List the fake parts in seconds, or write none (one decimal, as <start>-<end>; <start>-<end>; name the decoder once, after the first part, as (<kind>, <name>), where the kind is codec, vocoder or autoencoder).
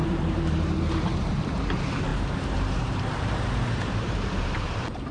0.0-5.1 (vocoder, BigVGAN v2)